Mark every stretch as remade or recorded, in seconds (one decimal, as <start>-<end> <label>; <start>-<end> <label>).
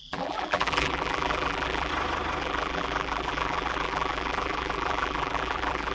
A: 0.0-1.9 remade; 1.9-2.4 recorded; 2.4-5.9 remade